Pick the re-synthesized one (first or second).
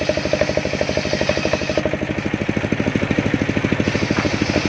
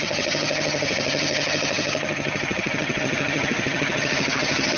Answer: second